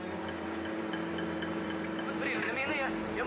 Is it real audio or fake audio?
real